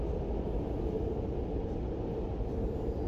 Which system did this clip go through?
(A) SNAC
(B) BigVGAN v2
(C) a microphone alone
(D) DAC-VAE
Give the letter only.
C